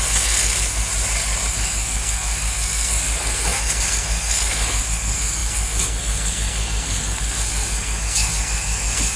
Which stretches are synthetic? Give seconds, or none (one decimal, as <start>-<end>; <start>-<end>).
0.0-0.9; 1.5-9.2